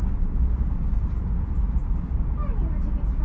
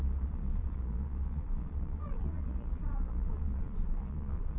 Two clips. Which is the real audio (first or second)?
first